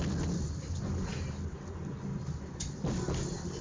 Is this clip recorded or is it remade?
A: recorded